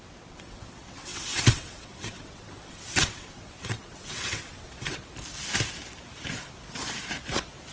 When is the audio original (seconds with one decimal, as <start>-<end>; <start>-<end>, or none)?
5.0-7.7